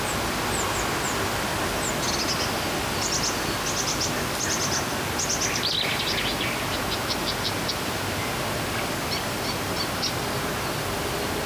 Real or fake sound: real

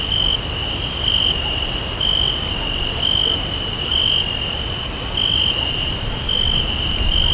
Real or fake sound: real